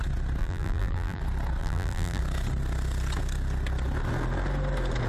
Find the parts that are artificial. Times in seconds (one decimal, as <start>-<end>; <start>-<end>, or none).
0.4-1.2; 1.6-2.2